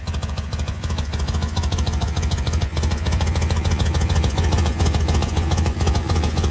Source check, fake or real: fake